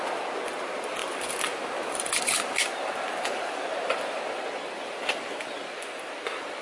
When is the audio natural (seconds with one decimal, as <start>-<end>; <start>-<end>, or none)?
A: 0.0-6.6

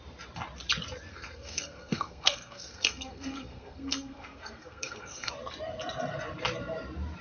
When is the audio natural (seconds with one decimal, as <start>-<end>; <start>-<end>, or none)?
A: 0.0-1.1; 5.3-7.2

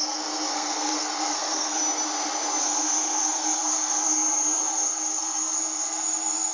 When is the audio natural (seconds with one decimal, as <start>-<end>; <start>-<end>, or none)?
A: 1.8-2.6

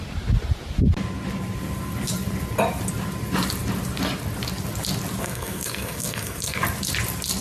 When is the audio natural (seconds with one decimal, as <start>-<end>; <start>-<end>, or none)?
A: 0.0-5.2; 6.6-7.4

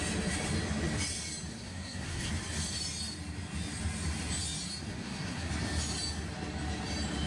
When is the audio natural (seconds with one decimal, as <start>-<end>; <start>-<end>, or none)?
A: 0.0-1.5; 2.3-4.9; 5.5-7.3